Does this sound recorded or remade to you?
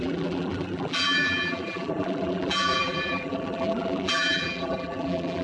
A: remade